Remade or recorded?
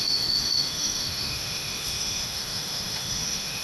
remade